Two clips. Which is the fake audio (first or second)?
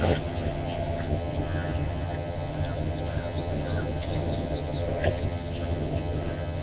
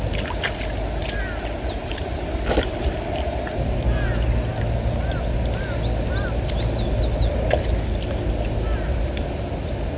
first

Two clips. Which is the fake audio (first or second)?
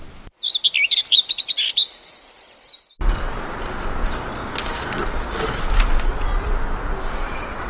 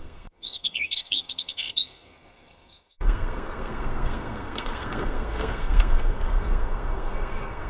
second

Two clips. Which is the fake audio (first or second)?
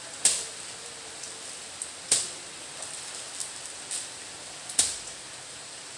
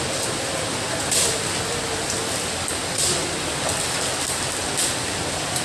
second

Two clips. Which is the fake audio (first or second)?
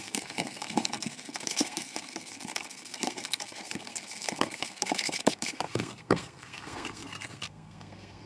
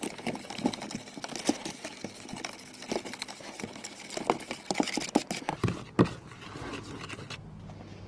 first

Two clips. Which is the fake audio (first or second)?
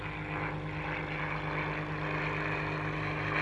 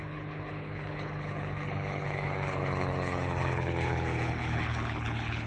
second